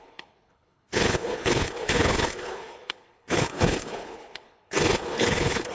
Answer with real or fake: fake